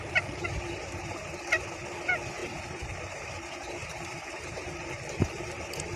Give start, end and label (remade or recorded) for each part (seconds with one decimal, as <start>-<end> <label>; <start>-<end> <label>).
0.0-2.4 recorded; 2.4-6.0 remade